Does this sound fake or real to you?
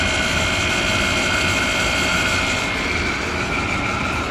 real